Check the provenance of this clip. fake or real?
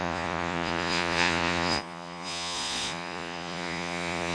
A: fake